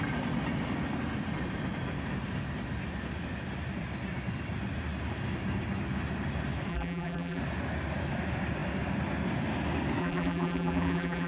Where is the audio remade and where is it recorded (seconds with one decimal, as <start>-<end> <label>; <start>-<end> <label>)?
0.0-6.7 recorded; 6.7-7.4 remade; 7.4-10.0 recorded; 10.0-11.3 remade